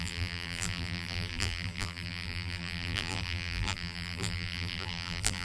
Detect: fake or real fake